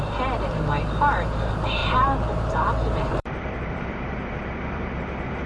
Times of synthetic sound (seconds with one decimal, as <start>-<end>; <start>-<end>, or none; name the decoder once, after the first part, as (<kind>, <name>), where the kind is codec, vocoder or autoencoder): 1.8-5.1 (vocoder, BigVGAN v2)